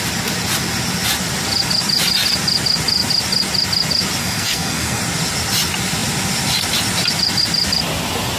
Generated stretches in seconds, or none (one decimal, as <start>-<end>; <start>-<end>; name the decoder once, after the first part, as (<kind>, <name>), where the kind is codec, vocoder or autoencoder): 4.2-5.0 (codec, SNAC)